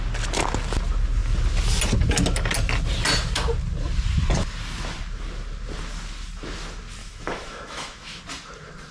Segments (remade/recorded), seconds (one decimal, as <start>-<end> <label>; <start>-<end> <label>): 0.0-7.0 recorded; 7.0-8.2 remade; 8.2-8.9 recorded